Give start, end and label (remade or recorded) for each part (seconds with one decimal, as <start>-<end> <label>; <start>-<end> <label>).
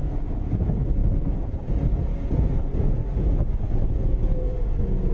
0.0-3.0 remade; 3.0-3.9 recorded; 3.9-5.1 remade